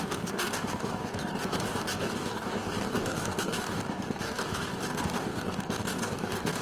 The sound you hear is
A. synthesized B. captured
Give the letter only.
A